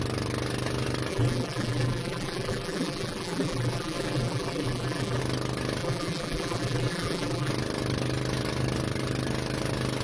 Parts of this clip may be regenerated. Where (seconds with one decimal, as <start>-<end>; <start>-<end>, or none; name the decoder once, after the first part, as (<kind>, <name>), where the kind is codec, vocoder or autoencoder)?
1.1-5.2 (vocoder, BigVGAN v2); 5.8-7.5